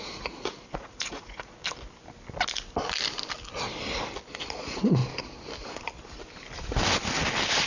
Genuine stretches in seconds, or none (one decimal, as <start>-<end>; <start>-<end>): 1.6-4.4; 5.0-7.7